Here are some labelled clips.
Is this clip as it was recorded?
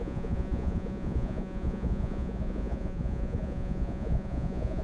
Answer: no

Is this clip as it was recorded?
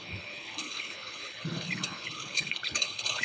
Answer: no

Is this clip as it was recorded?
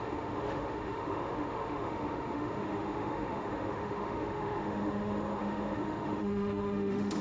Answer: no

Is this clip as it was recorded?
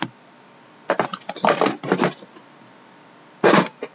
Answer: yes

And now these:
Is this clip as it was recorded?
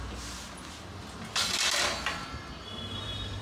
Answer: yes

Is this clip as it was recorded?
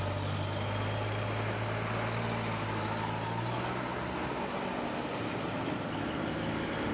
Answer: yes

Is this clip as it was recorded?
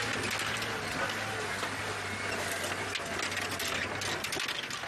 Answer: yes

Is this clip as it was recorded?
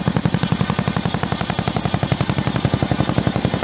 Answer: yes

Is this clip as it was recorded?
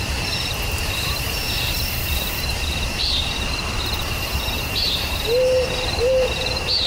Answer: no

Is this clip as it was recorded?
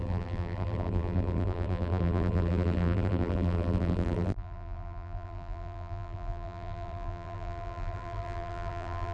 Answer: no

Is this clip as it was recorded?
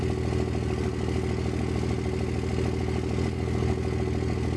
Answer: yes